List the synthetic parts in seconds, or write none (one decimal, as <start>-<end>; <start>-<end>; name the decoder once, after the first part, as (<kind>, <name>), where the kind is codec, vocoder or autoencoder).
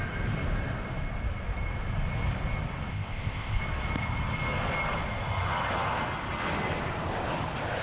2.9-3.6 (codec, ZipCodec)